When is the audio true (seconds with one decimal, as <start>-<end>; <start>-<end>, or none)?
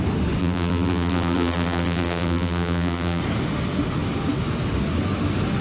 0.0-0.4; 3.2-5.6